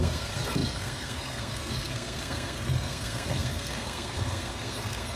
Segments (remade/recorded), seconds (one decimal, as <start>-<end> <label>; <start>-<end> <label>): 0.0-5.2 remade